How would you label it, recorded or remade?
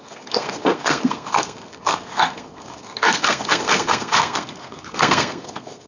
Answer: remade